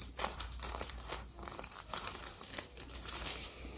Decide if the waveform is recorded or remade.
remade